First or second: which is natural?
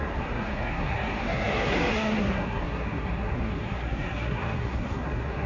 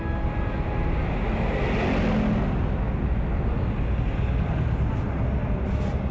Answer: second